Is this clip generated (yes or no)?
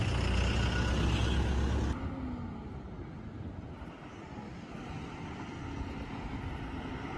no